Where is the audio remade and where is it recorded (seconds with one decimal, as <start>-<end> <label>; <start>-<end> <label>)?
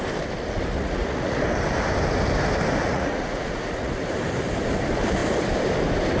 0.0-0.8 recorded; 0.8-1.4 remade; 1.4-2.8 recorded; 2.8-3.9 remade; 3.9-6.2 recorded